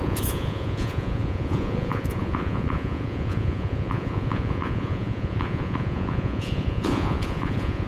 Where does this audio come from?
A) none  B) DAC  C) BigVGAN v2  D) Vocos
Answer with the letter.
D